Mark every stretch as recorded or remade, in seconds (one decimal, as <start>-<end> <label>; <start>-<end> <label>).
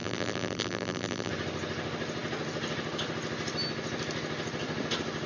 0.0-1.3 remade; 1.3-5.3 recorded